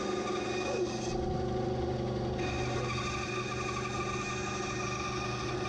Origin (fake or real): real